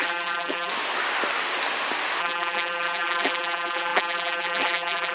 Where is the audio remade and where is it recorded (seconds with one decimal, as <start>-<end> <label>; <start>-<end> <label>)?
0.0-0.7 remade; 0.7-2.2 recorded; 2.2-5.1 remade

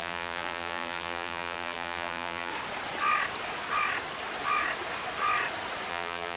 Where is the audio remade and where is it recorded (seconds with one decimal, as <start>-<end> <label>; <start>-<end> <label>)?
0.0-2.5 remade; 2.5-5.9 recorded; 5.9-6.4 remade

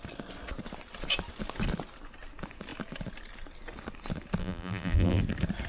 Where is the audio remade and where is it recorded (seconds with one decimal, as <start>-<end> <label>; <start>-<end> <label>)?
0.0-4.4 recorded; 4.4-5.2 remade; 5.2-5.7 recorded

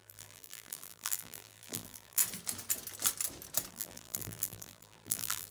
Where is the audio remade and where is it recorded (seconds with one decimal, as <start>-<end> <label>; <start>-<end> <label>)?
0.0-2.2 remade; 2.2-3.7 recorded; 3.7-5.5 remade